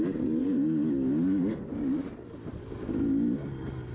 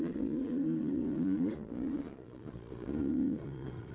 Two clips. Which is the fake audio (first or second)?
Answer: second